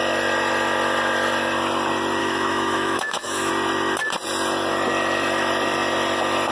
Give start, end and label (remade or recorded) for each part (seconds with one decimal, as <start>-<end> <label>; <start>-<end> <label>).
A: 0.0-2.2 recorded; 2.2-3.5 remade; 3.5-6.5 recorded